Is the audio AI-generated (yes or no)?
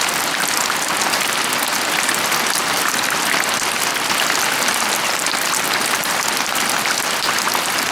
no